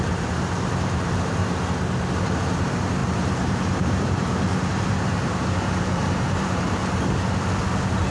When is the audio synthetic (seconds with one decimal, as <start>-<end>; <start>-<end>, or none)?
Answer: 0.0-1.4; 2.2-6.8